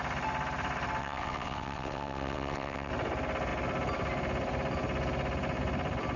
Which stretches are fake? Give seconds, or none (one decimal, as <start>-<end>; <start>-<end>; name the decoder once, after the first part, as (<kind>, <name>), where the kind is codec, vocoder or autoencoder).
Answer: 1.0-2.9 (vocoder, WaveNeXt)